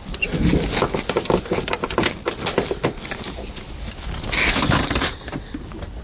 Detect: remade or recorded recorded